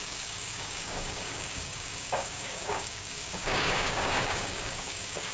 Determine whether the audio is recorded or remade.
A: remade